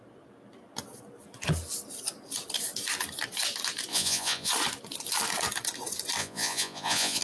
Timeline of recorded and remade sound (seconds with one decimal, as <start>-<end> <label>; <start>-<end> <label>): 0.0-3.9 recorded; 3.9-4.5 remade; 4.5-6.2 recorded; 6.2-7.2 remade

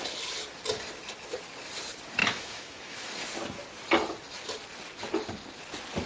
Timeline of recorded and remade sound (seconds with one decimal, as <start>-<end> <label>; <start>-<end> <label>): 0.0-2.2 recorded; 2.2-3.1 remade; 3.1-6.1 recorded